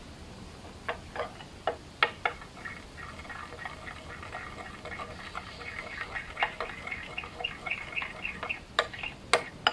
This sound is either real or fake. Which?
real